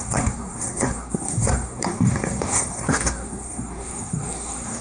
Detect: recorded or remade remade